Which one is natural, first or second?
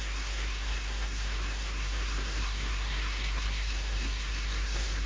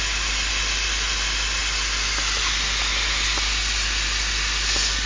second